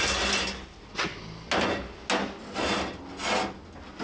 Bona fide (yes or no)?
yes